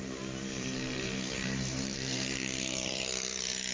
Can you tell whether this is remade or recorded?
remade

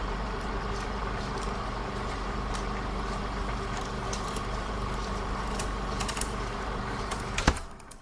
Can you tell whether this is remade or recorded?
remade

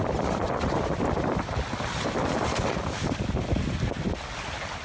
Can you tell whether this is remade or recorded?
remade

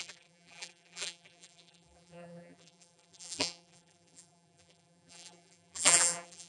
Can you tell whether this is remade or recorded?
remade